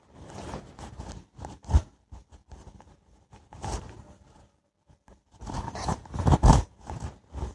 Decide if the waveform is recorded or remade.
recorded